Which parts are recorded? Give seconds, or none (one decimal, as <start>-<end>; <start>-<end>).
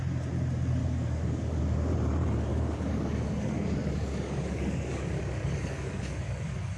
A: 0.0-0.8; 1.6-2.5